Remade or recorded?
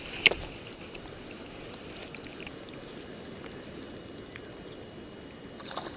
recorded